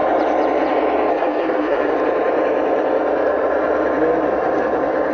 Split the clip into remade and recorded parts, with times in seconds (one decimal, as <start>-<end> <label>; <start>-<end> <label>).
0.0-1.1 recorded; 1.1-1.9 remade; 1.9-5.1 recorded

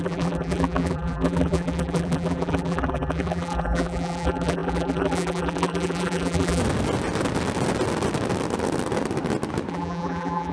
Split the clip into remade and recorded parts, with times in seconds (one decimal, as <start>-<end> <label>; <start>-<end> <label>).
0.0-6.6 remade; 6.6-9.7 recorded; 9.7-10.5 remade

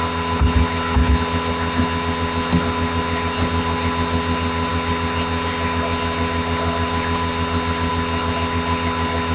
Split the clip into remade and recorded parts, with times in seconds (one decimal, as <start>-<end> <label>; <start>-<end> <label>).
0.0-9.3 recorded

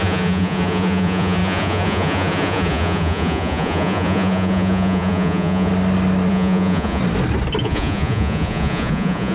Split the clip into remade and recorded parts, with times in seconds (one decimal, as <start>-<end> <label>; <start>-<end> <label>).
0.0-5.7 remade; 5.7-6.3 recorded; 6.3-7.0 remade; 7.0-7.6 recorded; 7.6-9.3 remade

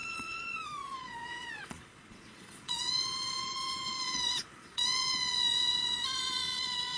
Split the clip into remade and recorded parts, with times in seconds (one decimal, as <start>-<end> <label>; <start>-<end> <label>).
0.0-7.0 remade

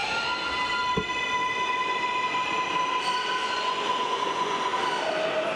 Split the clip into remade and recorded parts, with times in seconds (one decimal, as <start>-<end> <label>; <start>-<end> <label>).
0.0-3.4 recorded; 3.4-4.7 remade; 4.7-5.6 recorded

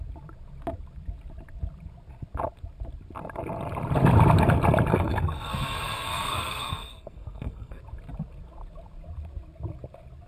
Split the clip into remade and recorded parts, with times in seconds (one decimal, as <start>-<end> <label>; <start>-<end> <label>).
0.0-4.9 recorded; 4.9-7.8 remade; 7.8-10.3 recorded